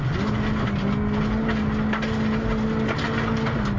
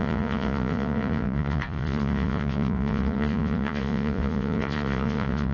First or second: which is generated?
second